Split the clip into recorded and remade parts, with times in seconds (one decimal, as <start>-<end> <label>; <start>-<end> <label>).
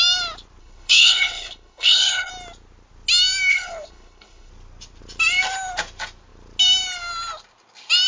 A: 0.0-0.6 recorded; 0.6-2.3 remade; 2.3-3.5 recorded; 3.5-4.5 remade; 4.5-8.1 recorded